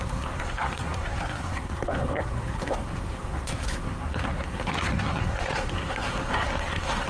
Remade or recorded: remade